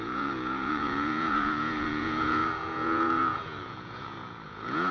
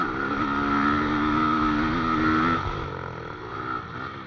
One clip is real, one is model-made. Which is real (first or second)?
second